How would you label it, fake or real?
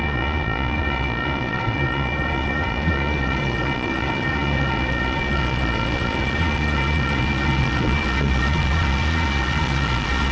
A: fake